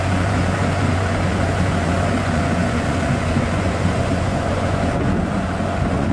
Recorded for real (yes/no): no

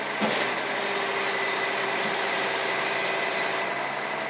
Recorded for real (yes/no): yes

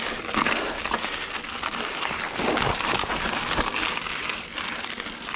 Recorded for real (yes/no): yes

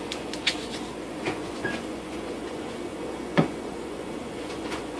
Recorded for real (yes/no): no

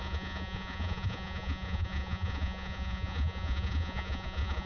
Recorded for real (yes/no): no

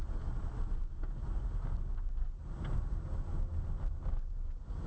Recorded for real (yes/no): yes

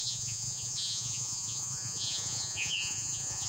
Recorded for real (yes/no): no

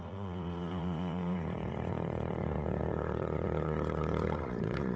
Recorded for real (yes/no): no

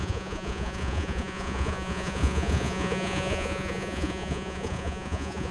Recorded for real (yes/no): no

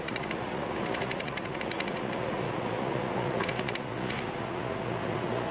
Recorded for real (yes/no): no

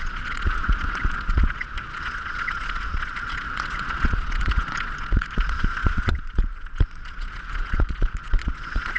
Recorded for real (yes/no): no